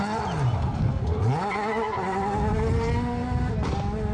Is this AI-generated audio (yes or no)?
no